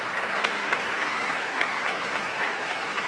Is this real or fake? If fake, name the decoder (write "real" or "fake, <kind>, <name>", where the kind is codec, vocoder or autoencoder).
fake, codec, SNAC